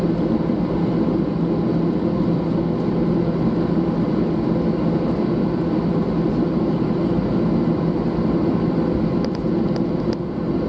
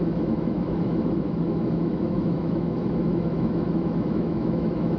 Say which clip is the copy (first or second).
second